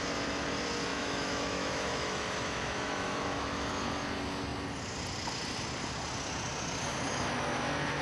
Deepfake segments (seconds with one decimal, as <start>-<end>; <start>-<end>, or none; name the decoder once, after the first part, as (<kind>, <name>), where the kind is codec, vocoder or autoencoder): 0.9-3.7 (autoencoder, DAC-VAE)